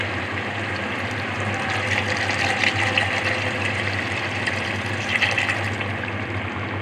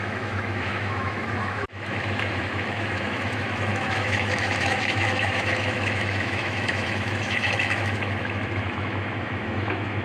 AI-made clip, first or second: second